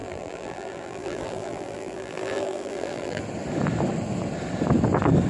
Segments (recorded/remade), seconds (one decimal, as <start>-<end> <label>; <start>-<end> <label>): 0.0-3.2 remade; 3.2-5.3 recorded